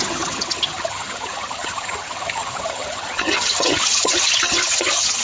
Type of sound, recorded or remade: remade